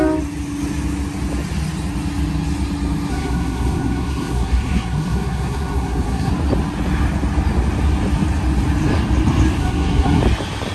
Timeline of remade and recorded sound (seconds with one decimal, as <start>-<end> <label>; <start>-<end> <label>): 0.0-3.1 recorded; 3.1-6.3 remade; 6.3-9.6 recorded; 9.6-10.2 remade; 10.2-10.7 recorded